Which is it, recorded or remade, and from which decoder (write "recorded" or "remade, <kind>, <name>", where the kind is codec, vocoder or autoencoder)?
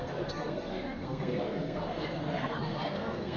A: remade, codec, SNAC